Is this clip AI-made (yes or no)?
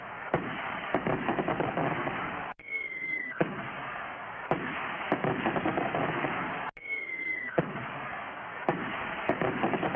yes